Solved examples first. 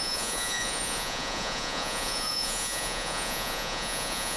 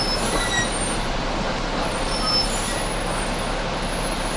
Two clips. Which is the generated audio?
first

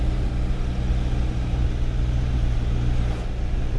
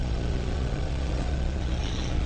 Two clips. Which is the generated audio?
second